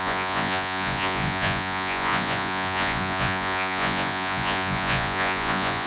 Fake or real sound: fake